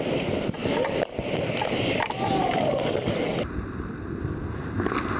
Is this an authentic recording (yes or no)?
yes